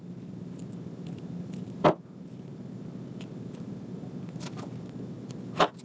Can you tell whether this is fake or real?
real